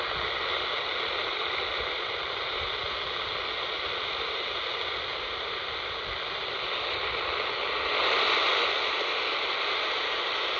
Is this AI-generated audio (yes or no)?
yes